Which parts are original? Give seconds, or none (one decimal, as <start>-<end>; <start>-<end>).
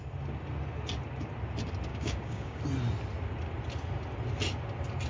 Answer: 0.0-1.9; 2.6-5.1